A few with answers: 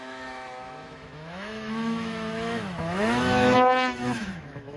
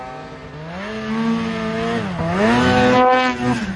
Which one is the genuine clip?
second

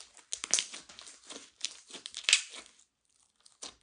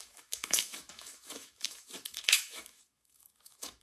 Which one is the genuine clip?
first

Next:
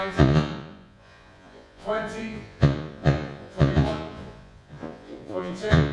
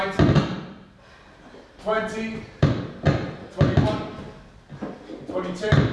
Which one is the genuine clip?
second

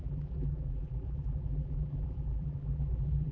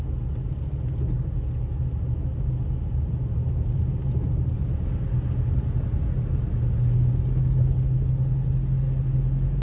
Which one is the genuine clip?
second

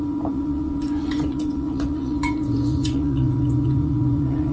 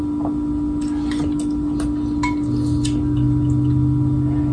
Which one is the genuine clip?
second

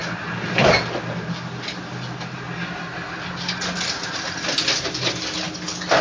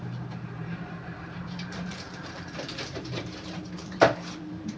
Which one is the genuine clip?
first